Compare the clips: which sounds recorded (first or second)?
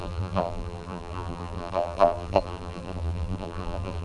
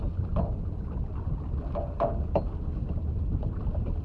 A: second